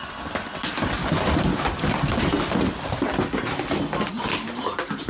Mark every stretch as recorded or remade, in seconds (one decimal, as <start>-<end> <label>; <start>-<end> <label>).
0.0-5.1 recorded